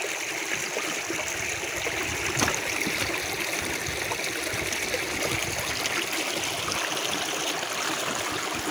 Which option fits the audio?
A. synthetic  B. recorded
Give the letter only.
B